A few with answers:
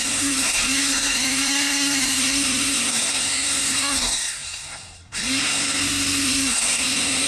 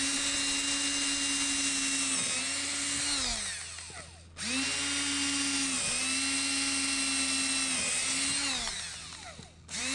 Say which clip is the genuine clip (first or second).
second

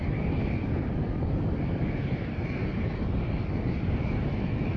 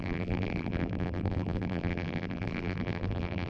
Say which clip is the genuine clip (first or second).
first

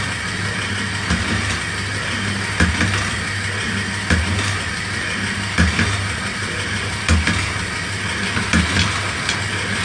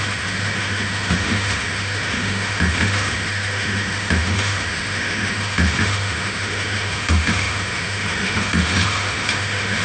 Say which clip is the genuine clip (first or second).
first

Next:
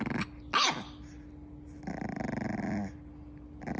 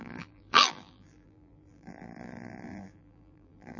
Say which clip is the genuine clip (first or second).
first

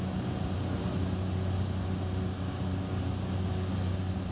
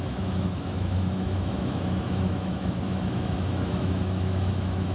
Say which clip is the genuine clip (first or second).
first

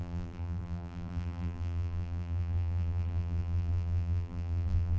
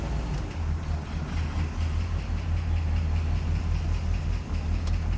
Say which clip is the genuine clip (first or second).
second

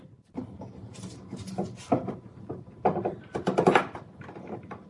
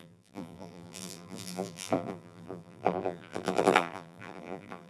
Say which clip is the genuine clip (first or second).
first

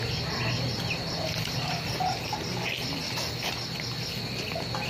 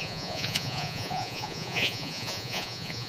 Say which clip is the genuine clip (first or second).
first